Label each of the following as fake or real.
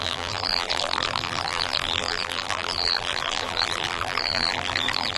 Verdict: fake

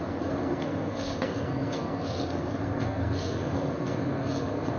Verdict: fake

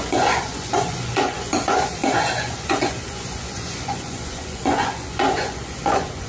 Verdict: fake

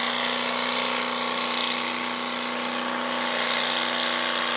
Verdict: real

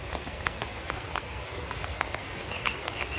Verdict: fake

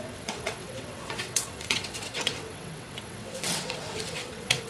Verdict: fake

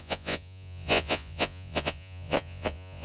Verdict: fake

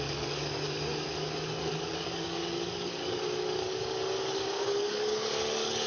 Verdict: fake